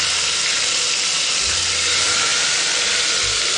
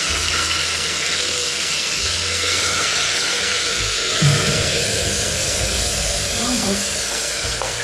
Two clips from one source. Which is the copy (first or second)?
second